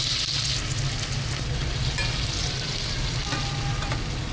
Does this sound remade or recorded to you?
recorded